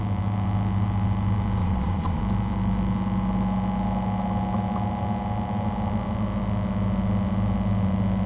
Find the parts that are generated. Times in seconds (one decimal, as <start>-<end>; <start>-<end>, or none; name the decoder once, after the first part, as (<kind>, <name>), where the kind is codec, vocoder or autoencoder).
1.6-2.2 (vocoder, Vocos)